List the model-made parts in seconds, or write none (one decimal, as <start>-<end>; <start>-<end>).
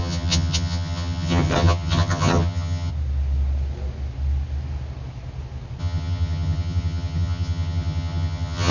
0.0-2.9; 5.8-8.7